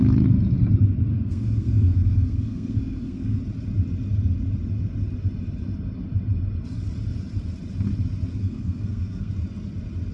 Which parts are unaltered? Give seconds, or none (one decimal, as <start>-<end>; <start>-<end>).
0.0-1.1; 3.4-8.4; 9.3-10.1